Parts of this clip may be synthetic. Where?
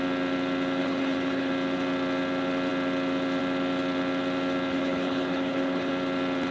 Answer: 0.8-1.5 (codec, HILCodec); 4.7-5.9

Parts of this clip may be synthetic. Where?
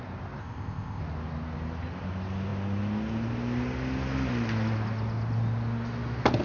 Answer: 0.4-1.0 (codec, ZipCodec)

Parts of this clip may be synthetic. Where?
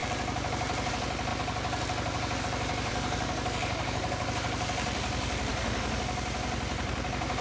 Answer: 2.9-4.3 (codec, DAC); 5.5-6.0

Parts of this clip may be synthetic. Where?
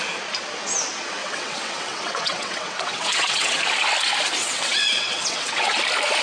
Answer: 1.2-3.6 (vocoder, WaveNeXt); 4.4-5.8